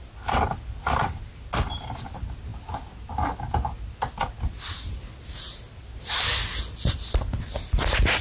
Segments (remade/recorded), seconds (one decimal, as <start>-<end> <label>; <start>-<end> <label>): 0.0-8.2 recorded